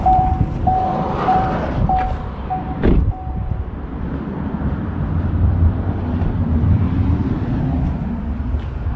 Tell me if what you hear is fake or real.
fake